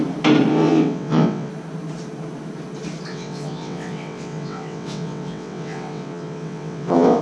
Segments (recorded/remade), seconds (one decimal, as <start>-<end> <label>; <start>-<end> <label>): 0.0-0.5 recorded; 0.5-1.5 remade; 1.5-3.1 recorded; 3.1-7.2 remade

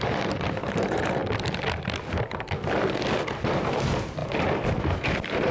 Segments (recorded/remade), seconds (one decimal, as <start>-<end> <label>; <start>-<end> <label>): 0.0-1.2 remade; 1.2-3.4 recorded; 3.4-4.2 remade; 4.2-4.8 recorded; 4.8-5.5 remade

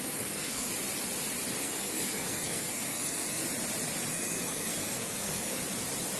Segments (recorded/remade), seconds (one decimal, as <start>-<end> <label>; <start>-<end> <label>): 0.0-0.7 remade; 0.7-1.6 recorded; 1.6-3.4 remade; 3.4-4.1 recorded; 4.1-5.6 remade; 5.6-6.2 recorded